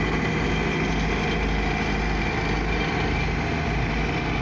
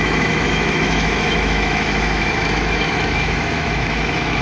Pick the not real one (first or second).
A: second